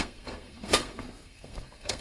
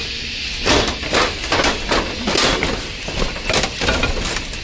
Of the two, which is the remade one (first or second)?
first